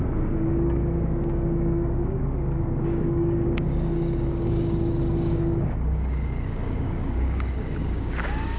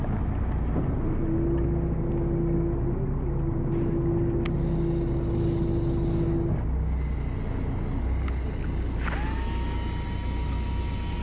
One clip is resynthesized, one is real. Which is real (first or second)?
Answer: second